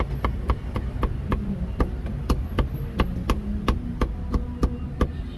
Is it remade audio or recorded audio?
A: recorded